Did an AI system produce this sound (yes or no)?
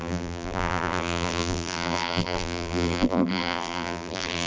yes